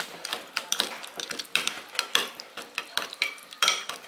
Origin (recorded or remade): remade